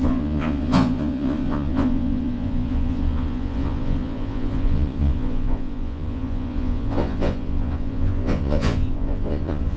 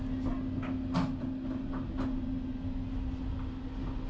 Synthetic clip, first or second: first